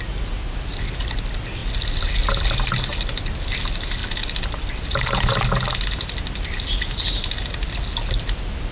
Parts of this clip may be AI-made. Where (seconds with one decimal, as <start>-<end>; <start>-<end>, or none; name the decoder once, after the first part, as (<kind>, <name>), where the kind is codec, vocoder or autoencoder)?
2.9-3.6 (vocoder, BigVGAN v2); 4.0-4.8